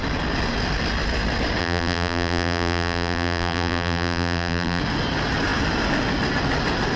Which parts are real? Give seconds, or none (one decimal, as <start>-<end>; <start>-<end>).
0.0-1.6; 4.8-7.0